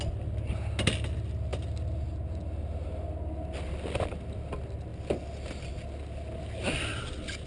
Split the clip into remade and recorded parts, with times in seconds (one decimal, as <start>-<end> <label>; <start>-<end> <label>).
0.0-7.5 recorded

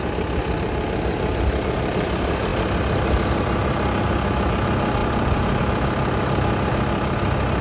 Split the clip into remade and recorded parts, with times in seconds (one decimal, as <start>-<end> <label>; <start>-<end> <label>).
0.0-7.6 recorded

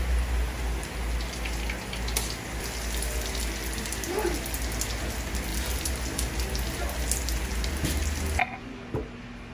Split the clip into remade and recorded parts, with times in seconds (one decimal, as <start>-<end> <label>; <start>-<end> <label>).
0.0-9.5 recorded

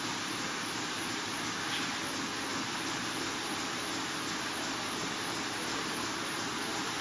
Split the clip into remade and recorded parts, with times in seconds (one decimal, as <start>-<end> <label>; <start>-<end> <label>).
0.0-7.0 recorded

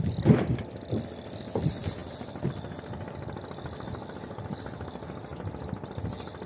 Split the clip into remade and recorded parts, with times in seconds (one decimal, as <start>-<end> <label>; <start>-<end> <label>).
0.0-6.5 recorded

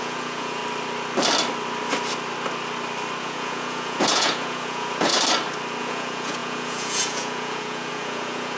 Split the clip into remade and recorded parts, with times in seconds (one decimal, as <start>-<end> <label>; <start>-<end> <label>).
0.0-0.6 remade; 0.6-3.2 recorded; 3.2-5.1 remade; 5.1-5.8 recorded; 5.8-8.6 remade